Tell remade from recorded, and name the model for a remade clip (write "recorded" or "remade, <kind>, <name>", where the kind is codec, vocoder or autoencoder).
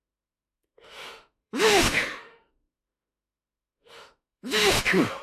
remade, autoencoder, DAC-VAE